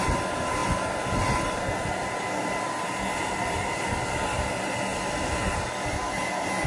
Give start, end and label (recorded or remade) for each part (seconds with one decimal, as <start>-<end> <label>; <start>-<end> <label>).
0.0-6.7 recorded